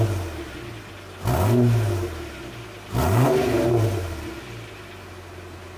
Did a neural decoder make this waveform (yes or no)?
no